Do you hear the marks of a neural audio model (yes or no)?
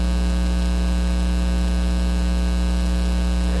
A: no